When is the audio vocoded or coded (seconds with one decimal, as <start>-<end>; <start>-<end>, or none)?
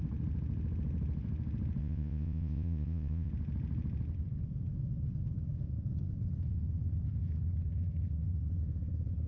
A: 1.8-3.3